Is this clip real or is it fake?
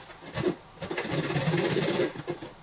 real